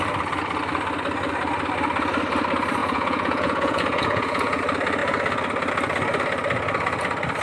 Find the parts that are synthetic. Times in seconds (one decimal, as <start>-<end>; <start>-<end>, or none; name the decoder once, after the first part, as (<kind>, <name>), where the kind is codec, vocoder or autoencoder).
2.8-4.6 (vocoder, Vocos)